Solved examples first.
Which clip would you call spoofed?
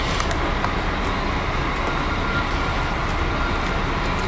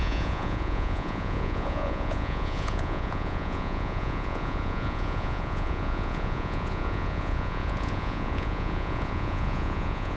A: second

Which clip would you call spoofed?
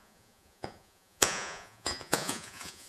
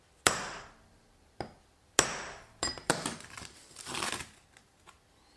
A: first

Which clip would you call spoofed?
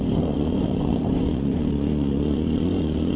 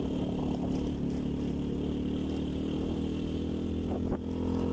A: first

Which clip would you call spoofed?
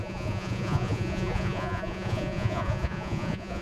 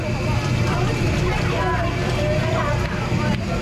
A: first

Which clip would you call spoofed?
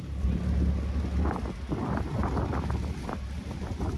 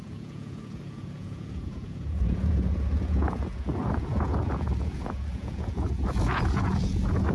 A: second